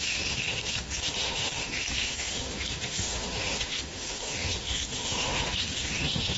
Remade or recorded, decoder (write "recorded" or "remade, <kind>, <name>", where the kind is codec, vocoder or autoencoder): remade, autoencoder, DAC-VAE